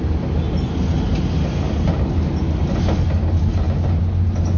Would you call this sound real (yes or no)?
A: yes